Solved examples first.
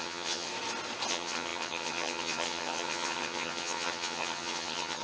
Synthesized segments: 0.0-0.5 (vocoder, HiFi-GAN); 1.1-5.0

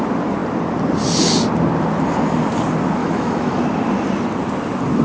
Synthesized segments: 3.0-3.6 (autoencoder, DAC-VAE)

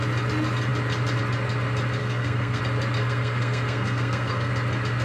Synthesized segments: 2.0-2.6 (codec, SNAC); 3.0-4.5

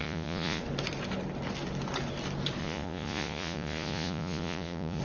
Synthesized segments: 0.0-0.6 (vocoder, Vocos); 2.6-5.0

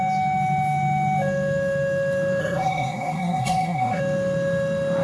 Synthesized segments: 2.4-4.0 (codec, SNAC)